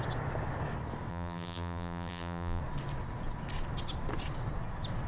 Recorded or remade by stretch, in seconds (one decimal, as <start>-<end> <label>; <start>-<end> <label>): 0.0-1.1 recorded; 1.1-2.6 remade; 2.6-5.1 recorded